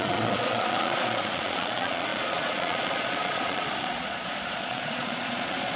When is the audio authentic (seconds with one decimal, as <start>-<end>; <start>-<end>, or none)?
none